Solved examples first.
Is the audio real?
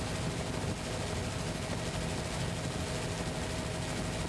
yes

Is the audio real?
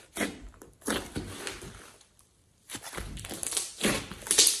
yes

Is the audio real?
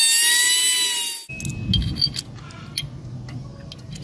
yes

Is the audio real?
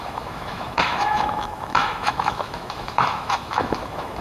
no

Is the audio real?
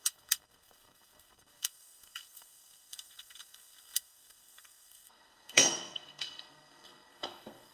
no